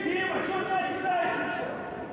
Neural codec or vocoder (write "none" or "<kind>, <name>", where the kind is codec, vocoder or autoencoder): none